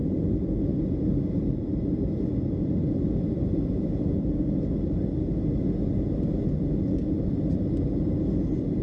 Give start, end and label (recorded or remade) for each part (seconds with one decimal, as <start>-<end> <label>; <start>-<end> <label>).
0.0-8.8 recorded